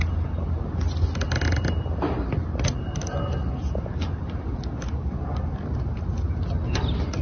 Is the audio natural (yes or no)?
yes